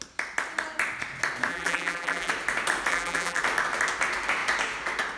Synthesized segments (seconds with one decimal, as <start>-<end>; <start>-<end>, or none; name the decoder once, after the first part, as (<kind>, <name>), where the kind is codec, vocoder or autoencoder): 1.5-2.3 (vocoder, BigVGAN v2); 2.9-3.4